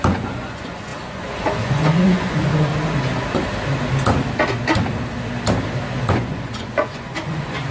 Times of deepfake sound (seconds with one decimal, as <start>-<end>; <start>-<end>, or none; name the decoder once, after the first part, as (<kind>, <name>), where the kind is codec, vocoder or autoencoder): 0.0-2.7 (vocoder, Vocos); 6.1-7.7